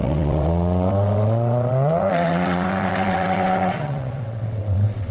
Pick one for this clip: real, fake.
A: fake